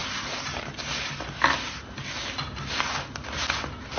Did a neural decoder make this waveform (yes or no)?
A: no